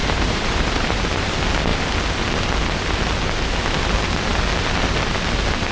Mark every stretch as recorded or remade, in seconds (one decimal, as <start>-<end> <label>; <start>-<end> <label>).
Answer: 0.0-1.0 remade; 1.0-5.7 recorded